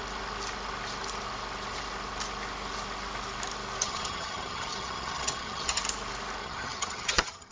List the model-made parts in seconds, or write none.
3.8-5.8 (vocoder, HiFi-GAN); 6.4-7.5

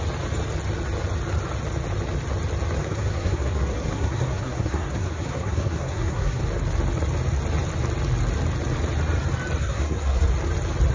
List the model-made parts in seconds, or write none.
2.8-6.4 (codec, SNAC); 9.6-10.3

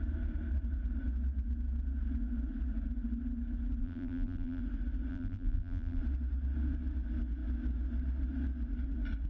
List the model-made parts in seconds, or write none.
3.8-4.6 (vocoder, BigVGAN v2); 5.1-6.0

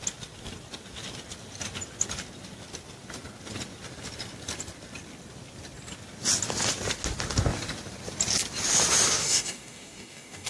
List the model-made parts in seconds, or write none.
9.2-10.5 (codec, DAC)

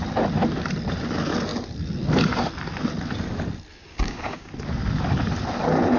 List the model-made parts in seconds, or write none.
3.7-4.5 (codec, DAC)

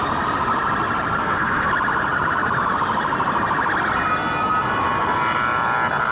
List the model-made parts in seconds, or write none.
1.2-1.7 (codec, SNAC)

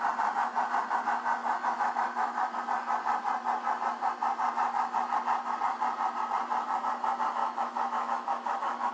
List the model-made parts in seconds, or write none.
1.4-2.6 (autoencoder, DAC-VAE); 7.4-8.9